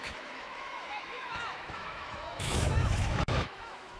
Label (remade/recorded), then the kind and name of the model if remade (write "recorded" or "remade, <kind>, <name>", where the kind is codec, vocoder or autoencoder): remade, autoencoder, DAC-VAE